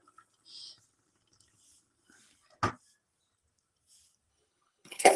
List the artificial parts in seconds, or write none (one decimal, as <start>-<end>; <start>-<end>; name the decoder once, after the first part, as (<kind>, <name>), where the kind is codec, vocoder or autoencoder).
4.3-5.2 (codec, HILCodec)